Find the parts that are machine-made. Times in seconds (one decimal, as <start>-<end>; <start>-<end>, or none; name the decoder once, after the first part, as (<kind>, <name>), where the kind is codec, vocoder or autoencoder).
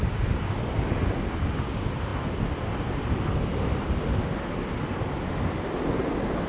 none